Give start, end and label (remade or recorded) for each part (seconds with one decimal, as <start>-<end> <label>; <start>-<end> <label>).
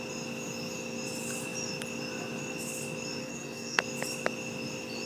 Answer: 0.0-3.2 recorded; 3.2-3.8 remade; 3.8-5.1 recorded